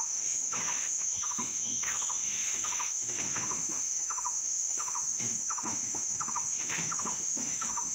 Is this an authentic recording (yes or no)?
no